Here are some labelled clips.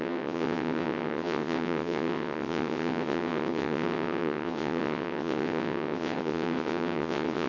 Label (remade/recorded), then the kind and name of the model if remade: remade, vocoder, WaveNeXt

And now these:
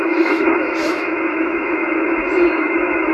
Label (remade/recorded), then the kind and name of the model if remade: remade, autoencoder, DAC-VAE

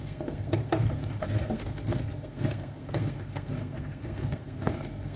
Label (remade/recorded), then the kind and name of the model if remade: remade, codec, SNAC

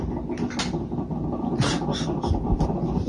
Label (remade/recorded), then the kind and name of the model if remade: recorded